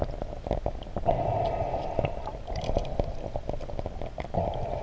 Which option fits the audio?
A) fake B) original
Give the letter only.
B